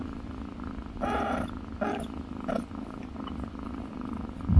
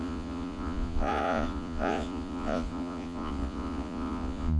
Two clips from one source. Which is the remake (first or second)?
second